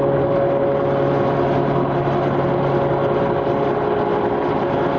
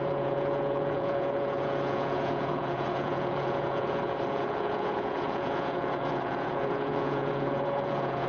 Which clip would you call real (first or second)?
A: first